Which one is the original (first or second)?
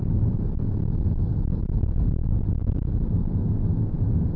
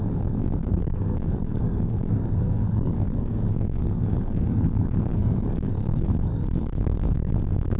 first